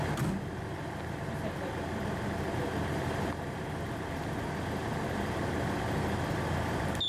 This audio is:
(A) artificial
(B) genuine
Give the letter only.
B